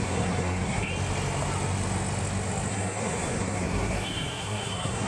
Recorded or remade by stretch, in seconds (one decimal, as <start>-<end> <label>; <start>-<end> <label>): 0.0-0.9 remade; 0.9-2.7 recorded; 2.7-5.1 remade